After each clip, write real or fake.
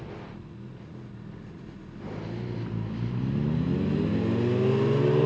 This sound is real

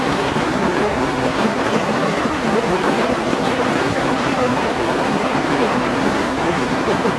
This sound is fake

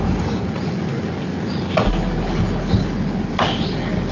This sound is real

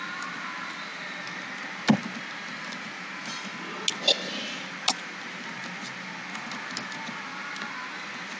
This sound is real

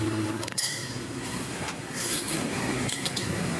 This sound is fake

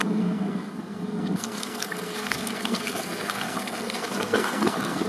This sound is fake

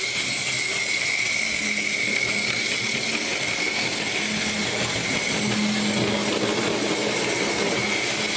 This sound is real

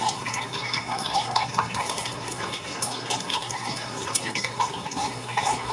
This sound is fake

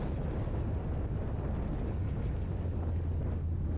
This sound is real